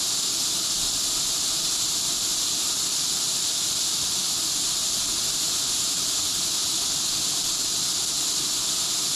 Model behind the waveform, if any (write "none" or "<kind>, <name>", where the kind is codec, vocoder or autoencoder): none